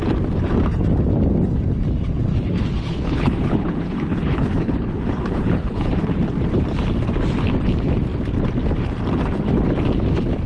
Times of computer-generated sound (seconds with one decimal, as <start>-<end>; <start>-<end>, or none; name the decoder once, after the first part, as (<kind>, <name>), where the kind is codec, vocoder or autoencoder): 2.3-6.0 (codec, HILCodec)

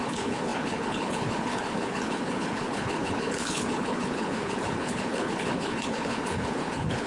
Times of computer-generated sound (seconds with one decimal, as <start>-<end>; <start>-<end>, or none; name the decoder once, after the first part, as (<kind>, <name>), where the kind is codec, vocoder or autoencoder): 0.0-7.1 (codec, HILCodec)

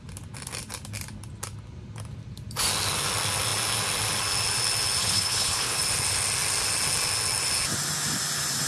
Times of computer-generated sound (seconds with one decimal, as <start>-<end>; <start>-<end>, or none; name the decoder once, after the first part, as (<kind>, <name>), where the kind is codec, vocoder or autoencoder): 5.0-5.8 (codec, HILCodec)

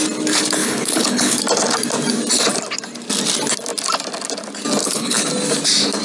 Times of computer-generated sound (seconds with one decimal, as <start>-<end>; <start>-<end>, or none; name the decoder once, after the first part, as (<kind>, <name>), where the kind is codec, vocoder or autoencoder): 0.6-1.4 (codec, HILCodec); 4.8-5.3

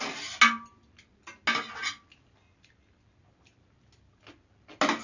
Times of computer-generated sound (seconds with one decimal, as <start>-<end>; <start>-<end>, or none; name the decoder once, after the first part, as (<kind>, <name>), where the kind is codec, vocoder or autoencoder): none